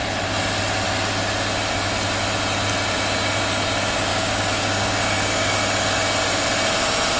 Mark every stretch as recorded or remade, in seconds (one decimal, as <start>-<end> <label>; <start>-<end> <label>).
0.0-4.1 recorded; 4.1-5.6 remade; 5.6-7.2 recorded